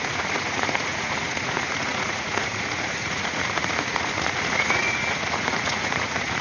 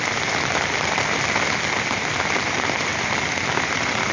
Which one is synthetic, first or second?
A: first